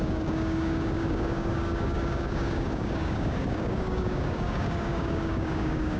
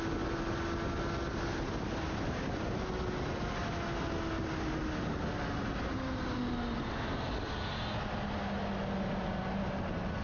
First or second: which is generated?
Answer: first